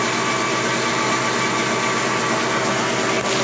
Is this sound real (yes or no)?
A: yes